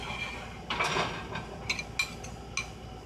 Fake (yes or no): no